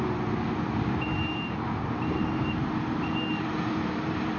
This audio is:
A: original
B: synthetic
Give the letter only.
B